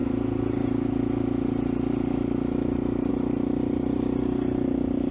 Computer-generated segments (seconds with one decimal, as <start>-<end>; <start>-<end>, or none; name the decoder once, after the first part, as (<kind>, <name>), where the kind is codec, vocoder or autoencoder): 0.0-5.1 (vocoder, BigVGAN v2)